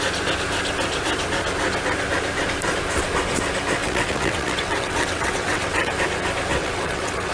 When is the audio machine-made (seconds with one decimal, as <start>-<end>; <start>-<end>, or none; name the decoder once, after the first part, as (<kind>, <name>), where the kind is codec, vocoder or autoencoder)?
3.8-5.9 (vocoder, WaveNeXt); 6.6-7.3

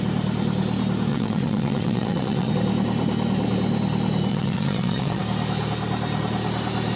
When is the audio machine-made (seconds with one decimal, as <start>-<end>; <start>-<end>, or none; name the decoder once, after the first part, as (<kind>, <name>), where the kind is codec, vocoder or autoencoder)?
1.1-2.5 (vocoder, WaveNeXt); 4.3-5.2

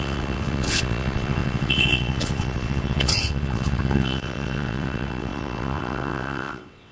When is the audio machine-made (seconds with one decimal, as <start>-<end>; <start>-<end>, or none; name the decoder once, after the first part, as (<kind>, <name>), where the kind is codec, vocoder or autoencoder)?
0.0-6.9 (vocoder, WaveNeXt)

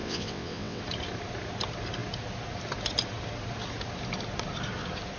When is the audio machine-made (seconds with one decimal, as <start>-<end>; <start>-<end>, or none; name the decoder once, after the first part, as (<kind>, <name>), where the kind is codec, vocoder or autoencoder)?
0.0-0.8 (vocoder, WaveNeXt)

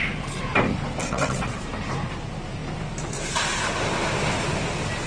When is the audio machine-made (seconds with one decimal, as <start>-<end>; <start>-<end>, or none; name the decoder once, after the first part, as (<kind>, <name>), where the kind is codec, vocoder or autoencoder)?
1.0-1.6 (vocoder, WaveNeXt)

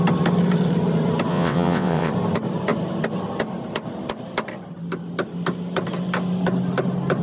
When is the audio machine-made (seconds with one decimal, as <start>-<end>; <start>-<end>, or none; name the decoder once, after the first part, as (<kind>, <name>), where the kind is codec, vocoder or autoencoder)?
1.3-2.1 (vocoder, WaveNeXt)